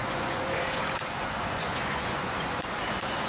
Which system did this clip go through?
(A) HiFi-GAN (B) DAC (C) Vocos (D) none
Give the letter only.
C